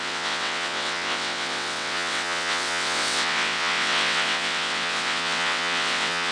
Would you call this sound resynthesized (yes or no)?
yes